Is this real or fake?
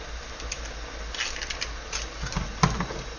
real